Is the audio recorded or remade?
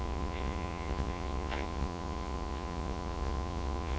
remade